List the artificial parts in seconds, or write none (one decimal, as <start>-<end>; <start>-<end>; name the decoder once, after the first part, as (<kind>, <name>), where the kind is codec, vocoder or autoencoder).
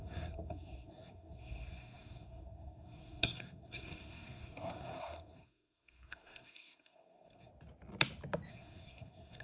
0.0-7.5 (codec, SNAC); 8.5-9.4